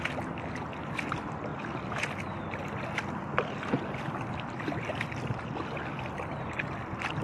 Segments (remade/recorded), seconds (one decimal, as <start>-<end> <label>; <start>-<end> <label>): 0.0-7.2 recorded